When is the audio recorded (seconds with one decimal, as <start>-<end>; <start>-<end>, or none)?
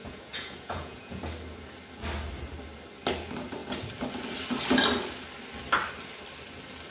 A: 1.2-6.9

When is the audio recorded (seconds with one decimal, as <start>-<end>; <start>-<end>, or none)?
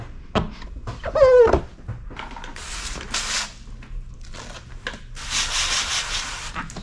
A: 0.0-6.8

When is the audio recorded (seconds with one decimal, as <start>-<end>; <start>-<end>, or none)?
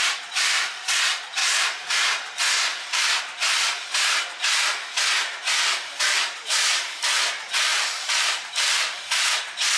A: 0.0-1.4; 1.9-2.7; 3.2-7.7; 8.5-9.8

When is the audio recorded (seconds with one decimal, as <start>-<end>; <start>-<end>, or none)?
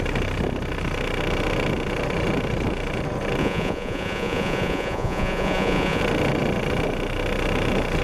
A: 0.0-3.4; 6.0-8.0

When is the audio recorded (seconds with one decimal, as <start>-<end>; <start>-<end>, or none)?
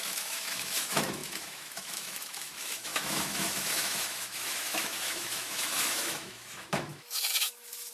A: none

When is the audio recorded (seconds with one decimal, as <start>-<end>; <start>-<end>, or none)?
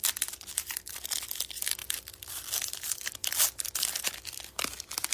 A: 0.0-5.1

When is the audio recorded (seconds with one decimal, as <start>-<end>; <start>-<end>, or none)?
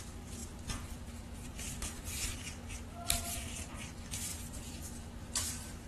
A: none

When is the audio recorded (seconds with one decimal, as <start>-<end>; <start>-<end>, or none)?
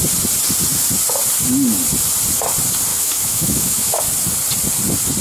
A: 0.0-2.9; 4.0-5.2